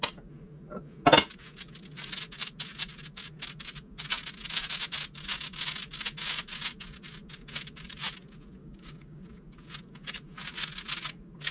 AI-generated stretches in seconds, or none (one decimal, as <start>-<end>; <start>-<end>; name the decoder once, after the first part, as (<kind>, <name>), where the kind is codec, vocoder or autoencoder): 8.6-9.2 (codec, DAC)